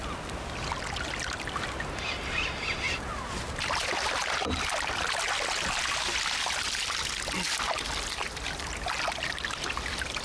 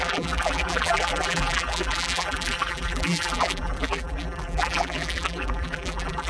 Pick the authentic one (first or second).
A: first